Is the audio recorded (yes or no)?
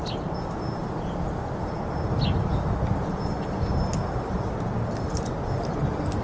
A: yes